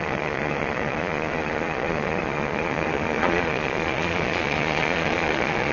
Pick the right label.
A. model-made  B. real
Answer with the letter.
A